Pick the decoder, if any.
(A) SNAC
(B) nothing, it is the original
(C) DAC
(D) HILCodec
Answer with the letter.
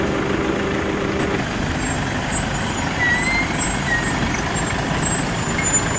B